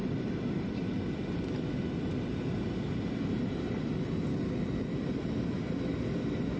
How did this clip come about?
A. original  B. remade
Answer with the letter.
A